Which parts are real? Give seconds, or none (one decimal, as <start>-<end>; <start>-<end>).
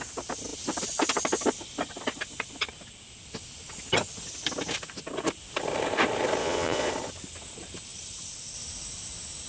0.0-6.4; 6.9-9.5